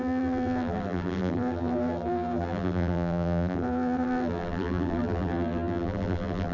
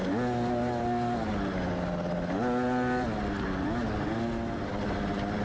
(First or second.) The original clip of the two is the second